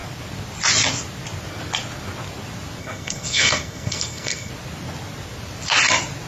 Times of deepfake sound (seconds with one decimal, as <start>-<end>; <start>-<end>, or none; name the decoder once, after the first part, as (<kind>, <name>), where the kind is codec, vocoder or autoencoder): 2.8-4.5 (codec, SNAC)